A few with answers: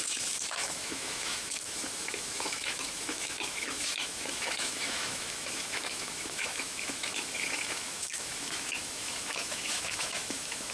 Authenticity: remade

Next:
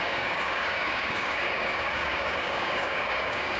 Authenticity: remade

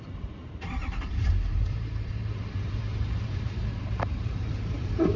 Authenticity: remade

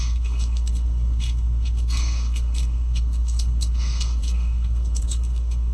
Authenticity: remade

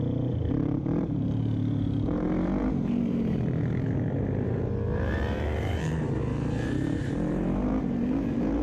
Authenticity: remade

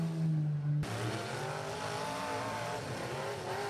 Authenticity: recorded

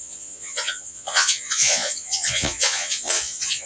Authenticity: remade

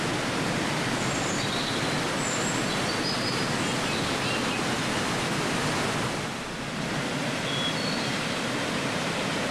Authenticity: recorded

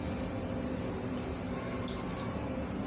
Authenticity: recorded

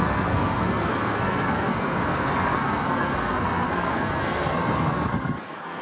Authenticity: remade